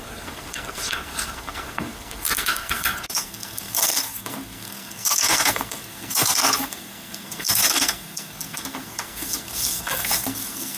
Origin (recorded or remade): remade